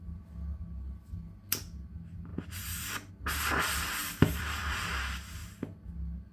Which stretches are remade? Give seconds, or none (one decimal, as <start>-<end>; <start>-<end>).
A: 2.3-3.1; 4.0-5.0